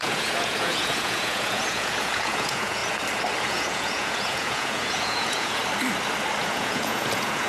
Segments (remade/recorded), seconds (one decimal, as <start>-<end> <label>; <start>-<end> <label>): 0.0-2.8 remade; 2.8-3.4 recorded; 3.4-5.6 remade; 5.6-6.4 recorded; 6.4-7.5 remade